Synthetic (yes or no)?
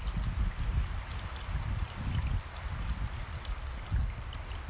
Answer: no